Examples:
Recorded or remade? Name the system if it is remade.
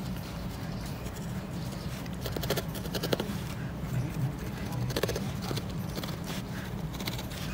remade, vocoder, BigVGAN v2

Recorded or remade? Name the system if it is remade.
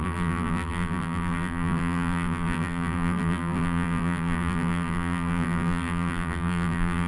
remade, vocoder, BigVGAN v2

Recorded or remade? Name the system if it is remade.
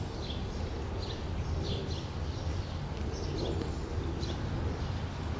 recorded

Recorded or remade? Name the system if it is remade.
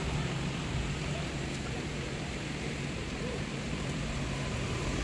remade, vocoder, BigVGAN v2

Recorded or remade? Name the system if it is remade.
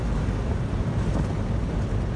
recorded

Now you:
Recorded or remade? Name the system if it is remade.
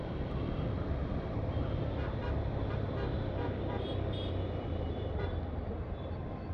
remade, vocoder, BigVGAN v2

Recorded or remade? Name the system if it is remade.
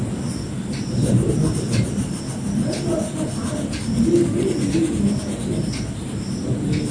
recorded